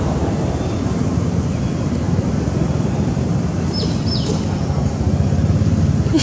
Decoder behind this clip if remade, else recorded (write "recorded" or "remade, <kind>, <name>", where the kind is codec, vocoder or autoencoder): recorded